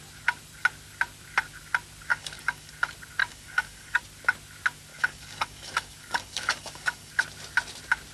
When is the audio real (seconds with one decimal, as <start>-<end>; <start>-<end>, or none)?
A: 0.0-2.1; 2.7-3.2; 4.0-4.9; 7.1-8.1